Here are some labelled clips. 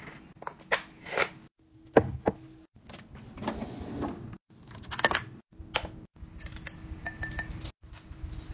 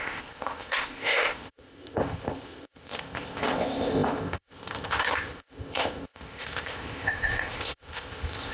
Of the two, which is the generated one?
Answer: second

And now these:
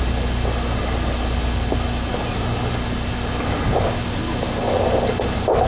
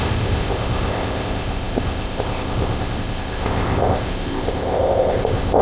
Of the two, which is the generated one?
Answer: second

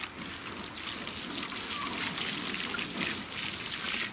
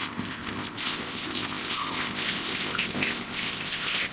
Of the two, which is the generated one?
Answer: second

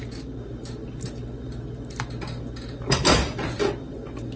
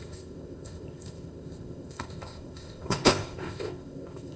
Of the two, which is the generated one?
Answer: second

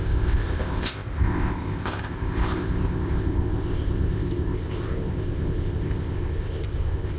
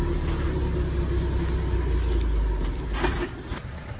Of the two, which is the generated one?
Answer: first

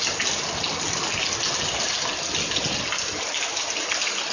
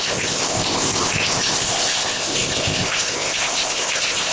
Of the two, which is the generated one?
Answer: second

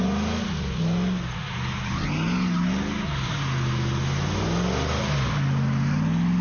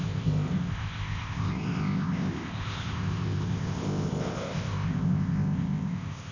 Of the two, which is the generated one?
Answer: second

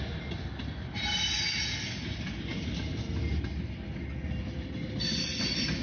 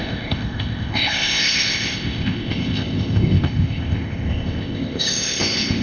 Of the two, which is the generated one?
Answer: second